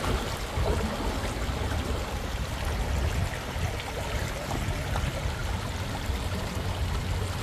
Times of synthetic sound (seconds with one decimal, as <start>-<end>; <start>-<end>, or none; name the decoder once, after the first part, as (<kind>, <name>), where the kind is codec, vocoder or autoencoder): none